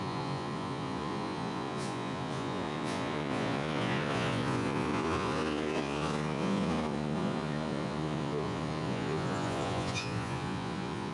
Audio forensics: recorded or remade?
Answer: remade